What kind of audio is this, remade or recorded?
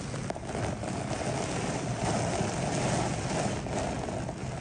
recorded